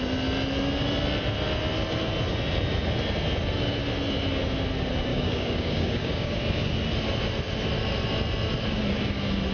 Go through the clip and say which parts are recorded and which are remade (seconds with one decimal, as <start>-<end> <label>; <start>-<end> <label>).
0.0-5.1 recorded; 5.1-6.4 remade; 6.4-9.5 recorded